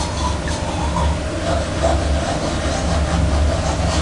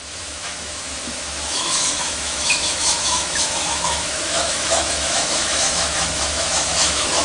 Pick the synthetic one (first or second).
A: second